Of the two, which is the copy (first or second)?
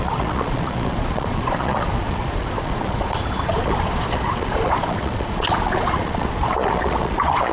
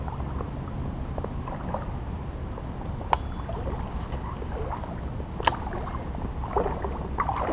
first